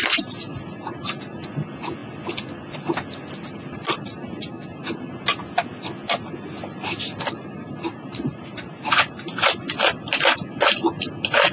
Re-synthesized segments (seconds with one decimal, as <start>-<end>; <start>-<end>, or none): 7.9-9.6